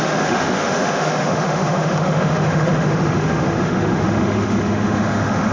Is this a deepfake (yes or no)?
yes